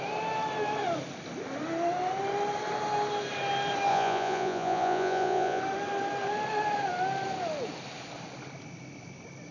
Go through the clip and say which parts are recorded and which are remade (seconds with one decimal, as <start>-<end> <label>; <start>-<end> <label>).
0.0-3.9 recorded; 3.9-5.6 remade; 5.6-9.5 recorded